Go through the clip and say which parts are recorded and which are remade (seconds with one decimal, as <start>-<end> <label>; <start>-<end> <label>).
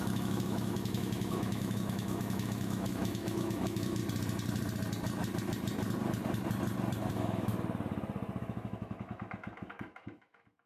0.0-4.0 remade; 4.0-7.1 recorded; 7.1-7.5 remade; 7.5-8.4 recorded; 8.4-10.7 remade